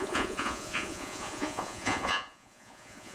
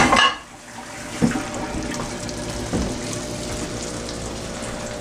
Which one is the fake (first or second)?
first